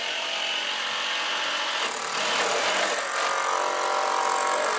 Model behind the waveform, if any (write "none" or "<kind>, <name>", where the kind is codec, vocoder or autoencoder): none